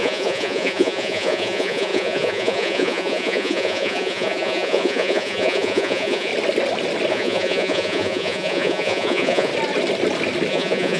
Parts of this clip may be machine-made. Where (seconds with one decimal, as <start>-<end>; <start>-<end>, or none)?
0.0-6.3; 7.1-9.5; 10.5-11.0